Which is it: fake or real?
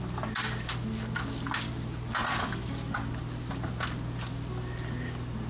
real